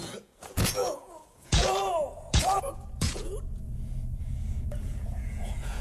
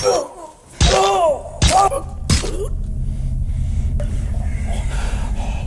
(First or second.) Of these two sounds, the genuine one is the second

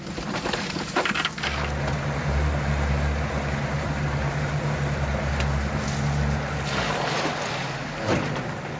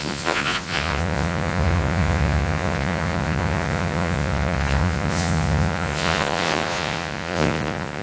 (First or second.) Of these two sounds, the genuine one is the first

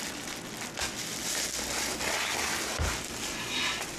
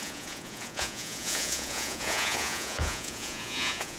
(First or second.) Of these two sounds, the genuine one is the first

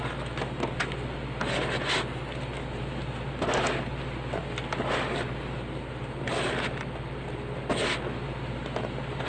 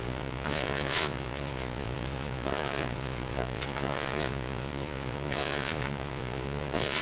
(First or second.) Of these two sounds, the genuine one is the first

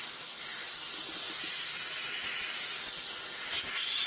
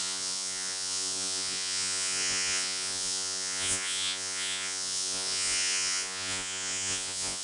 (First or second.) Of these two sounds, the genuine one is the first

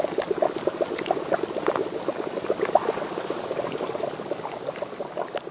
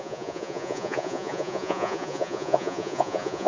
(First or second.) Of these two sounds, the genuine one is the first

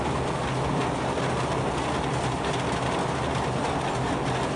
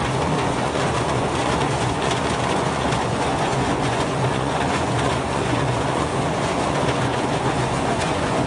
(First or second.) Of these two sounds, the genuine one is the first